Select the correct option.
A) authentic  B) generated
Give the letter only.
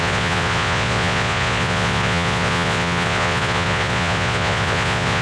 B